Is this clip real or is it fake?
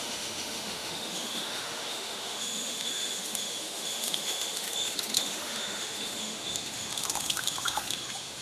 fake